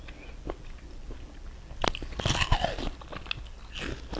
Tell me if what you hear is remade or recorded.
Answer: recorded